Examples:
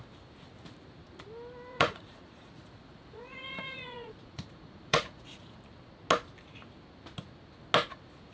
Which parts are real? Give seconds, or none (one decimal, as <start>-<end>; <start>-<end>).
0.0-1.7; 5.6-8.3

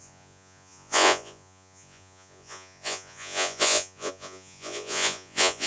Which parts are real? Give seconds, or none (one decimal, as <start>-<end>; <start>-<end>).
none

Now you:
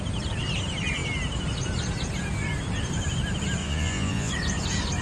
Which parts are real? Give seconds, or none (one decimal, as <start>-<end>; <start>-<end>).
0.0-3.6; 4.3-5.0